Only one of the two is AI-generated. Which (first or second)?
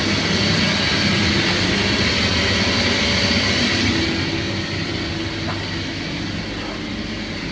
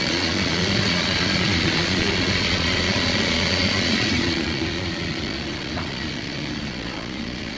second